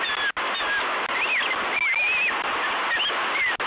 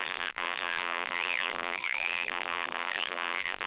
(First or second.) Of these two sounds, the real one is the first